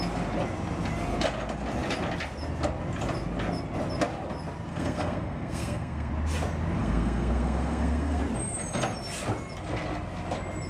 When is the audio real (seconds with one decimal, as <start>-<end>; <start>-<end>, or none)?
0.0-4.7; 6.1-6.8; 8.2-10.7